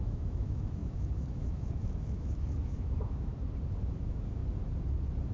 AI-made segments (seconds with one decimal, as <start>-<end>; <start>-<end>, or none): 0.0-3.3; 3.8-4.4